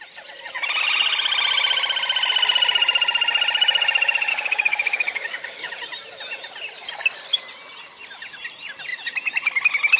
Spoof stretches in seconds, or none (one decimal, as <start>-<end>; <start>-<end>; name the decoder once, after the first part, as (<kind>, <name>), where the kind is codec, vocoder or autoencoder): 4.3-5.7 (codec, DAC)